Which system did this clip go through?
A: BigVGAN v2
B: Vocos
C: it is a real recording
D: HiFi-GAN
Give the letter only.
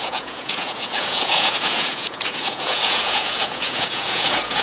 B